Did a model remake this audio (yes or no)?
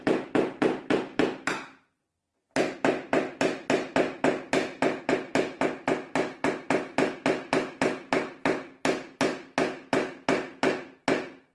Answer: no